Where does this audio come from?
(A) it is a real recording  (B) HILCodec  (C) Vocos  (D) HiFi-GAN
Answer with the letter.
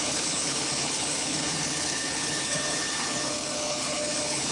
B